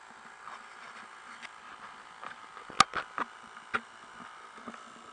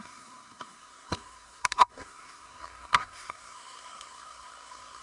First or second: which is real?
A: first